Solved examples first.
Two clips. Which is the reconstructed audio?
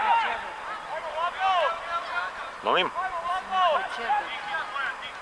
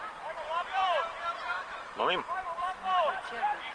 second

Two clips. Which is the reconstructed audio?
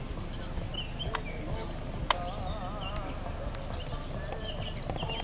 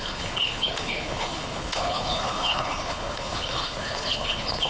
second